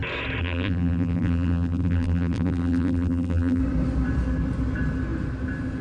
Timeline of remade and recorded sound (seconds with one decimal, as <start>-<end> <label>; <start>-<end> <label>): 0.0-0.4 recorded; 0.4-3.6 remade; 3.6-5.8 recorded